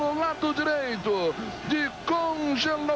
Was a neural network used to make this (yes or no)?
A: no